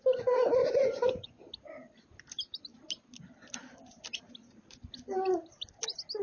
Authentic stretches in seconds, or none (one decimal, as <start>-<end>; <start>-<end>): 0.0-0.6; 1.4-6.2